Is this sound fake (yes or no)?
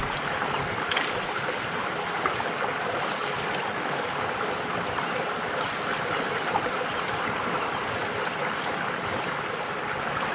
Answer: no